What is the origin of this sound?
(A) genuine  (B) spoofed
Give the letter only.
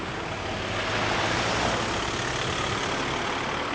A